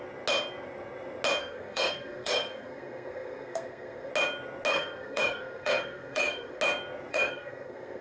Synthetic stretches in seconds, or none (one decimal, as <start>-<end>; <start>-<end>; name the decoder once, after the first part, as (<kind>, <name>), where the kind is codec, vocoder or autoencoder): 1.4-4.1 (codec, SNAC); 4.7-6.6; 7.1-8.0